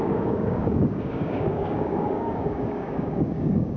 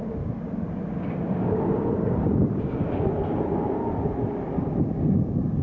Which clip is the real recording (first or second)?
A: second